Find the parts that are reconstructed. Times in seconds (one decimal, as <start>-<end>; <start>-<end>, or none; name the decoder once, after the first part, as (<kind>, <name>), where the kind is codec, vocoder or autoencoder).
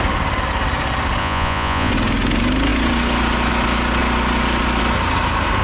1.2-1.9 (vocoder, Vocos)